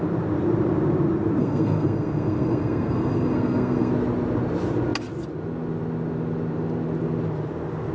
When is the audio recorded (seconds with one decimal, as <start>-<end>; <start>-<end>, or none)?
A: 0.0-1.4; 3.9-7.9